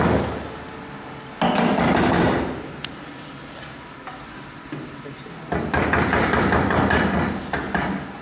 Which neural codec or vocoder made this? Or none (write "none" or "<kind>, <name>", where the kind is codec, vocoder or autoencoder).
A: none